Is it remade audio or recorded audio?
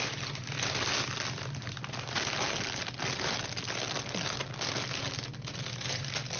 recorded